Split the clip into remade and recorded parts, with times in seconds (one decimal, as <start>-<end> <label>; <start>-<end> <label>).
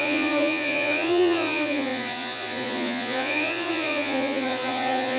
0.0-5.2 remade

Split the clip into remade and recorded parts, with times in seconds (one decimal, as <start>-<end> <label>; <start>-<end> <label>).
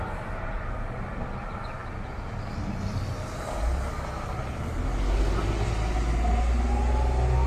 0.0-7.5 recorded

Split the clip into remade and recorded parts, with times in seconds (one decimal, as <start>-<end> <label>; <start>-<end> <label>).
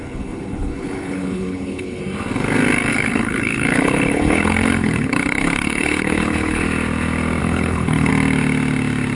0.0-2.0 remade; 2.0-2.9 recorded; 2.9-6.6 remade; 6.6-7.4 recorded; 7.4-8.1 remade; 8.1-9.2 recorded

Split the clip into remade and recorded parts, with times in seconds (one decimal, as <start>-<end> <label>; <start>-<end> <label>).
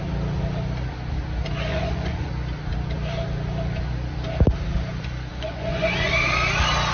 0.0-1.7 recorded; 1.7-2.3 remade; 2.3-5.3 recorded; 5.3-6.1 remade; 6.1-6.9 recorded